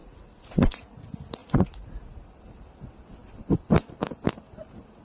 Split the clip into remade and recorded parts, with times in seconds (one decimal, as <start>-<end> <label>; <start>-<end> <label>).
0.0-1.0 remade; 1.0-1.4 recorded; 1.4-2.2 remade; 2.2-5.0 recorded